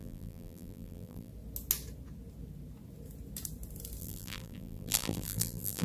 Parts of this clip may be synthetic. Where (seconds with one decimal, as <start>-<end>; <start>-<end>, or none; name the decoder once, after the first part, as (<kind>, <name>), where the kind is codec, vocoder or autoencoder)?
0.0-1.3 (vocoder, BigVGAN v2); 4.0-5.8